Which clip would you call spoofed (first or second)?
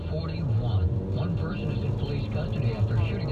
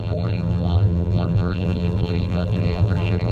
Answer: second